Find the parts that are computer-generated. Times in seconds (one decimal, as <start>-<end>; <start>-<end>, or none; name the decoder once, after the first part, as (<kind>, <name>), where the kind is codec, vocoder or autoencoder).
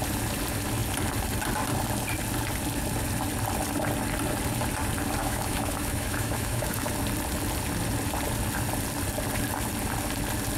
5.2-6.9 (autoencoder, DAC-VAE)